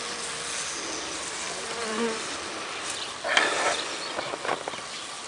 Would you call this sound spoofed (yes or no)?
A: yes